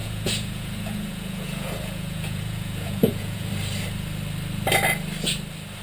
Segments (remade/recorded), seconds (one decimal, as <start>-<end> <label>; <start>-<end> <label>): 0.0-3.5 remade; 3.5-5.8 recorded